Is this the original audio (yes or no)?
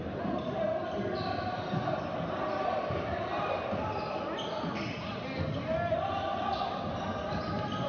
yes